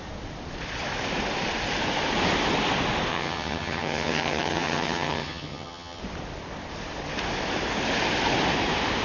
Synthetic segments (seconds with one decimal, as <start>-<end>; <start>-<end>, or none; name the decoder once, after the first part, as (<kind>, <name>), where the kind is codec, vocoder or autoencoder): 3.1-6.0 (vocoder, HiFi-GAN)